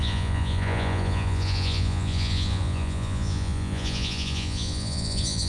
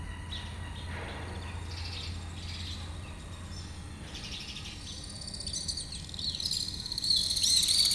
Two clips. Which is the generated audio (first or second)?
first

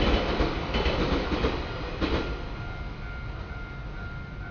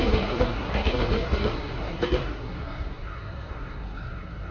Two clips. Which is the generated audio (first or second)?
second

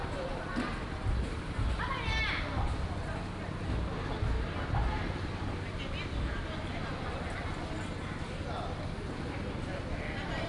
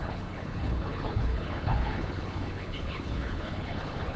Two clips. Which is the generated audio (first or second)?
second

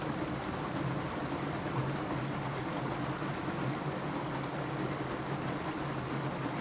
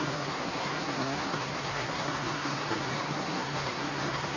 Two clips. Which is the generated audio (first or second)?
second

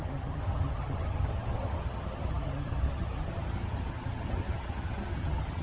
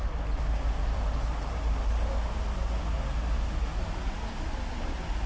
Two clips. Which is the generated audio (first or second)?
first